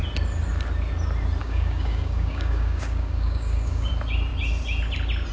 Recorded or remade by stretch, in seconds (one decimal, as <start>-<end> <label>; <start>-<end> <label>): 0.0-1.4 recorded; 1.4-3.9 remade; 3.9-5.3 recorded